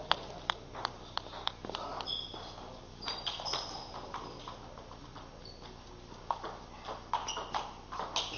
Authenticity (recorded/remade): recorded